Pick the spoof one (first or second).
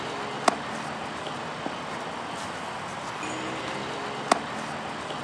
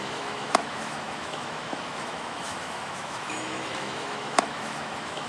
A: second